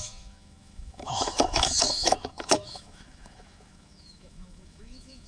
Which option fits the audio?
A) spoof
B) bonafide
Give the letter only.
A